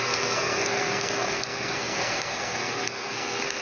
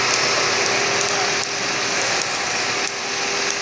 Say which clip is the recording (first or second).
second